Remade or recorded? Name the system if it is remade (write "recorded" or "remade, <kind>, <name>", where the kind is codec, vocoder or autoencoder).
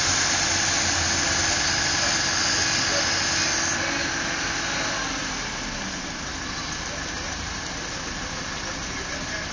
recorded